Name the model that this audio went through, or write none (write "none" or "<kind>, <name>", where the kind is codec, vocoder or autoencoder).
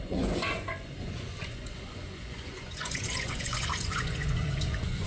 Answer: vocoder, Vocos